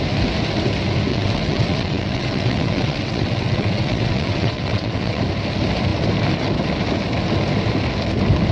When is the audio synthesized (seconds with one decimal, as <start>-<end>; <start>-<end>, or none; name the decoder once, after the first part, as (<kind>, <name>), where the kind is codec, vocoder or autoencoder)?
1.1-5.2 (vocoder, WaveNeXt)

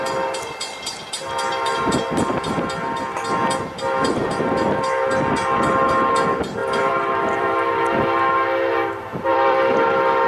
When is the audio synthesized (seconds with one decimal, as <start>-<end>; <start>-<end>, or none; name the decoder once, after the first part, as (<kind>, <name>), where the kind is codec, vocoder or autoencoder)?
6.6-7.7 (vocoder, BigVGAN v2); 9.3-10.3

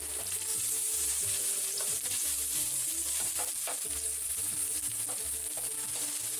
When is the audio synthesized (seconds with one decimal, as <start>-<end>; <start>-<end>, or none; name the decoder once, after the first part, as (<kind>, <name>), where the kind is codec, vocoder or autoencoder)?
0.5-3.5 (vocoder, BigVGAN v2); 4.3-4.9

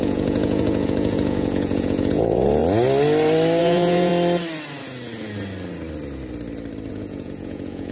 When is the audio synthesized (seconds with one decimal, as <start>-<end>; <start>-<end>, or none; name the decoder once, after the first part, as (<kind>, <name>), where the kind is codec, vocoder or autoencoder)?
0.0-2.6 (vocoder, Vocos); 3.6-4.1; 6.9-7.9